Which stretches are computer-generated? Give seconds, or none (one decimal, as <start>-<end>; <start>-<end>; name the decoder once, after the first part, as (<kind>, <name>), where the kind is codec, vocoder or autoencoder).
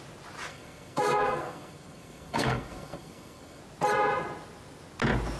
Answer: 0.5-3.6 (codec, SNAC)